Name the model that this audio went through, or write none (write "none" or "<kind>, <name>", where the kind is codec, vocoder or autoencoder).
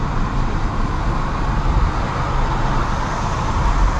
none